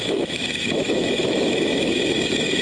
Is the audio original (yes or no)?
no